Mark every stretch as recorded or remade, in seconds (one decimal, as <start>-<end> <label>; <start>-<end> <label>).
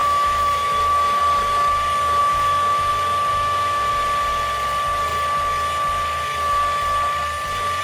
0.0-1.2 remade; 1.2-2.2 recorded; 2.2-2.9 remade; 2.9-3.3 recorded; 3.3-3.9 remade; 3.9-7.8 recorded